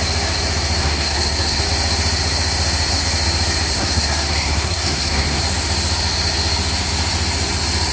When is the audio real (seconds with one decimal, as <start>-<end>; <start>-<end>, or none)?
0.0-0.8; 1.6-3.7; 5.4-7.9